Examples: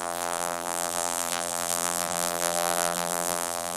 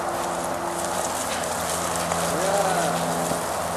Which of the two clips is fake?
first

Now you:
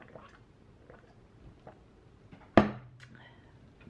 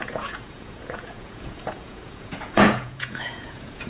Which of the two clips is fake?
second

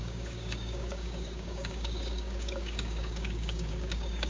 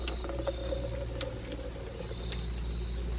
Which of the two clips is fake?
first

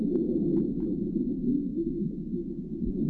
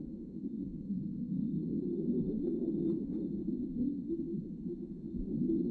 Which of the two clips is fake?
second